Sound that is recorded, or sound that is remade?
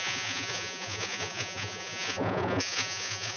remade